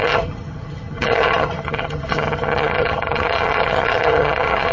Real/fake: fake